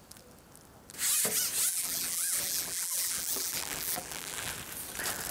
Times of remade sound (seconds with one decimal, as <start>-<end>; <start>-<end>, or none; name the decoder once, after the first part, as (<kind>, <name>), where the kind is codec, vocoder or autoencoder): 1.7-4.5 (vocoder, BigVGAN v2)